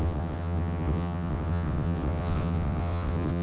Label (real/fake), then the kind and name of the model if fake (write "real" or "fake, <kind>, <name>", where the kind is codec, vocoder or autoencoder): fake, vocoder, WaveNeXt